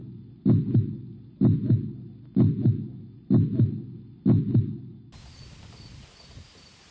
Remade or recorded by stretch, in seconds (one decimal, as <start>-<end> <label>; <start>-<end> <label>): 0.0-6.9 recorded